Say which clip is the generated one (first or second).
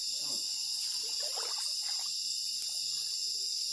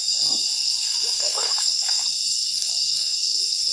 second